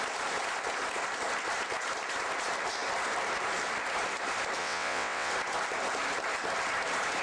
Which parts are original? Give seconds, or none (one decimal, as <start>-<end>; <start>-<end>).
0.0-4.6; 5.3-7.2